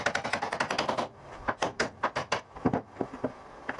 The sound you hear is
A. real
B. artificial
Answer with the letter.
B